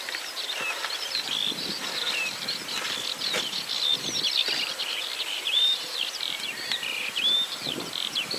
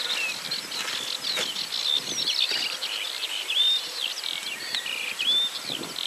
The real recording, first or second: second